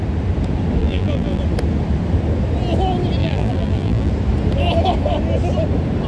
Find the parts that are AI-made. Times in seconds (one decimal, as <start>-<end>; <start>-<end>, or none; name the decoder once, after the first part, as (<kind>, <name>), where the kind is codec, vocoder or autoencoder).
0.8-1.4 (vocoder, BigVGAN v2); 3.2-4.1